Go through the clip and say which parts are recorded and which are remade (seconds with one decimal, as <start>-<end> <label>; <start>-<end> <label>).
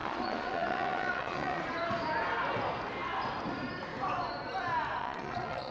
0.0-1.6 remade; 1.6-5.0 recorded; 5.0-5.7 remade